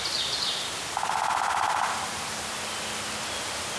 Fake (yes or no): no